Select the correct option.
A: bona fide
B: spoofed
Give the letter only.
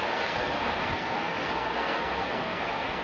B